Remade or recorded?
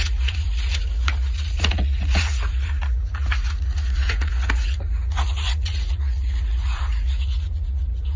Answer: remade